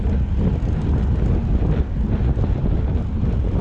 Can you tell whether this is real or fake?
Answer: real